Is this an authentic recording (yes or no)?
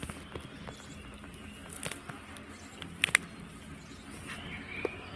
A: yes